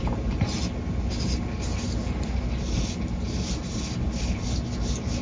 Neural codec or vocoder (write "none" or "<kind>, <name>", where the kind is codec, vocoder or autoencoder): none